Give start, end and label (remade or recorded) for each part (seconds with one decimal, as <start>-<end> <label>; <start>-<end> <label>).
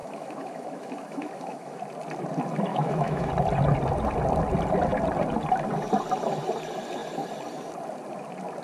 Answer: 0.0-1.8 remade; 1.8-2.7 recorded; 2.7-3.3 remade; 3.3-8.6 recorded